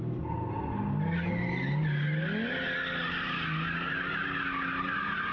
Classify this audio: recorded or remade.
recorded